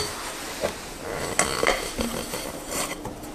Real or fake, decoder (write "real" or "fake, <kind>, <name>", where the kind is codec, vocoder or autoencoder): real